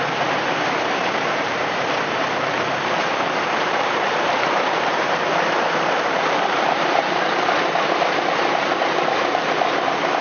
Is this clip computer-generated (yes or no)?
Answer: yes